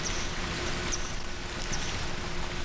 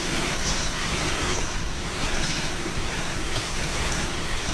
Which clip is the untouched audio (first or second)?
first